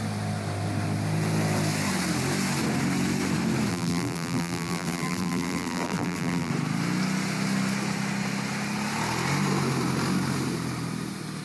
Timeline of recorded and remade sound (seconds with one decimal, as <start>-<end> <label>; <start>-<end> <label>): 0.0-3.7 recorded; 3.7-6.5 remade; 6.5-11.4 recorded